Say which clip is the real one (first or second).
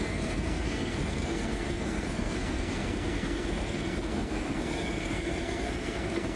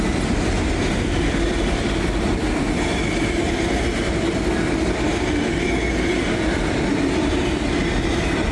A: second